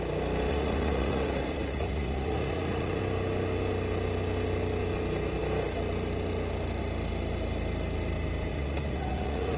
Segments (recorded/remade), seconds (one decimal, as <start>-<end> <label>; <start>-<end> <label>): 0.0-0.5 recorded; 0.5-3.0 remade; 3.0-8.5 recorded; 8.5-9.6 remade